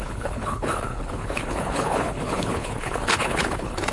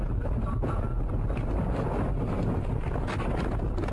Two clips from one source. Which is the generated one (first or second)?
first